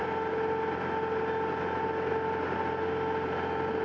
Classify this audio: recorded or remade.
recorded